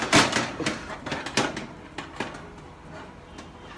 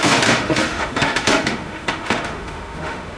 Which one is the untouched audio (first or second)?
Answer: first